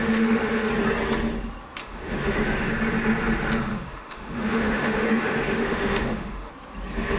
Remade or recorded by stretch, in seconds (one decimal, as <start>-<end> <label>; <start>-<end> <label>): 0.0-0.7 remade; 0.7-1.8 recorded; 1.8-2.7 remade; 2.7-3.7 recorded; 3.7-6.5 remade; 6.5-7.2 recorded

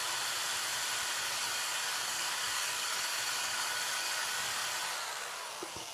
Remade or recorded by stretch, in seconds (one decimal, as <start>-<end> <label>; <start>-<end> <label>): 0.0-1.2 recorded; 1.2-4.6 remade; 4.6-5.2 recorded; 5.2-5.9 remade

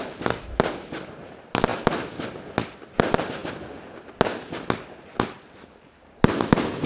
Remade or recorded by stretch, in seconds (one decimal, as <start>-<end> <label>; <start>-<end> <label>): 0.0-6.9 recorded

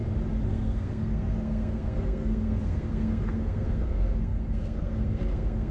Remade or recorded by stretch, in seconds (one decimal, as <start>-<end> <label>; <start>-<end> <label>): 0.0-0.5 recorded; 0.5-5.7 remade